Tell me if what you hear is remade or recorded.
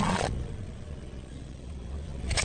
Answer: remade